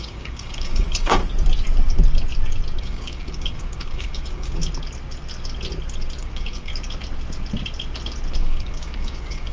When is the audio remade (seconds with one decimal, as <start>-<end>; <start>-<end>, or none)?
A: 0.0-1.2; 2.8-4.6; 6.2-6.7; 8.4-9.5